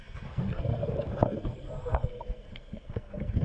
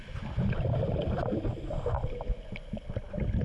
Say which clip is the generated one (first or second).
first